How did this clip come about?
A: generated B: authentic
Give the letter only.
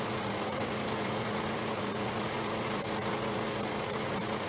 A